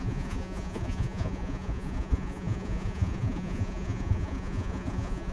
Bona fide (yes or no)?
no